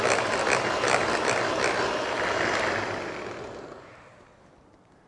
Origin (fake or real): real